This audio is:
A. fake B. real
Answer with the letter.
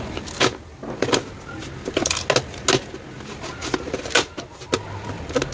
B